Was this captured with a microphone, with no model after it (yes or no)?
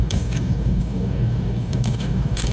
no